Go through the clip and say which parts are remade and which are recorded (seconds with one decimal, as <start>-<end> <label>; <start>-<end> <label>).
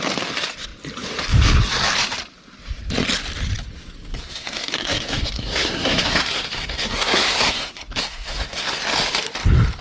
0.0-4.1 recorded; 4.1-8.8 remade; 8.8-9.8 recorded